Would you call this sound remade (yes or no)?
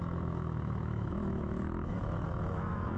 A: yes